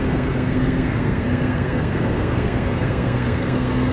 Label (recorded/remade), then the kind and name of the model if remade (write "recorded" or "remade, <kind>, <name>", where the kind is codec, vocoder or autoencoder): remade, codec, SNAC